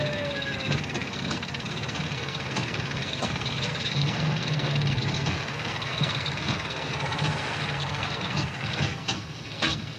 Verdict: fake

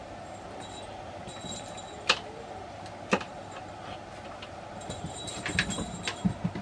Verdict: real